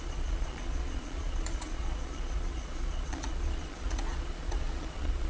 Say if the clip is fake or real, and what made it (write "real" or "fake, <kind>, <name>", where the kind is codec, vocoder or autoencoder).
fake, vocoder, Vocos